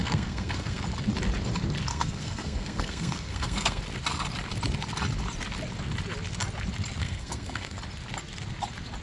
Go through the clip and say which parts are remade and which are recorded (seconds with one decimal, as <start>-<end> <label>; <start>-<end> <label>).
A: 0.0-0.8 remade; 0.8-1.9 recorded; 1.9-3.8 remade; 3.8-7.0 recorded; 7.0-7.8 remade; 7.8-9.0 recorded